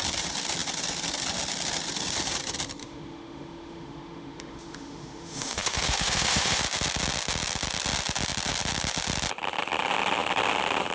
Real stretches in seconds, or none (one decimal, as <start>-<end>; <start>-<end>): 0.0-2.8; 6.6-10.9